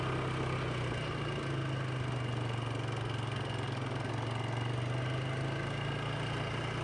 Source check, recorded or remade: recorded